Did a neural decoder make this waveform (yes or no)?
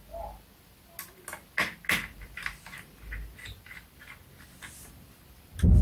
no